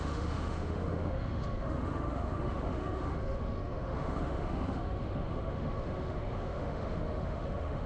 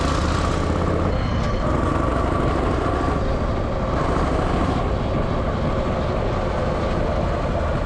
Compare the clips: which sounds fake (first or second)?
first